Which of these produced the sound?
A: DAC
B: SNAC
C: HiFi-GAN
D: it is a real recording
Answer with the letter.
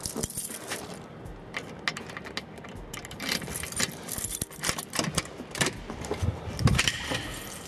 D